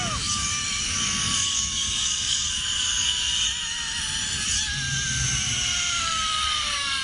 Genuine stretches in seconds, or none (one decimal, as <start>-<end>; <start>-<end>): 3.3-6.0